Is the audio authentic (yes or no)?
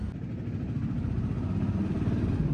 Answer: yes